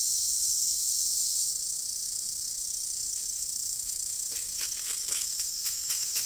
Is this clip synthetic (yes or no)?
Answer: yes